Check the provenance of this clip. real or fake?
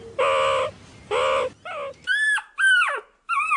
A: real